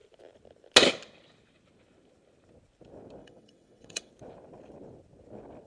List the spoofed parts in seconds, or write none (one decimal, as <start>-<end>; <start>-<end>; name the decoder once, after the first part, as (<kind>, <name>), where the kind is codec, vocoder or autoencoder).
3.2-4.1 (vocoder, WaveNeXt)